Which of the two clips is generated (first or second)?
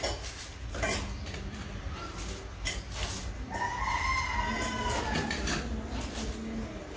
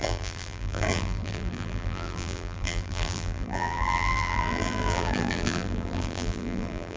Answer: second